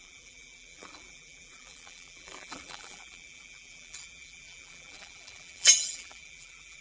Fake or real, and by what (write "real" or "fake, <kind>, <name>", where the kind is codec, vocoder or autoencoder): fake, vocoder, BigVGAN v2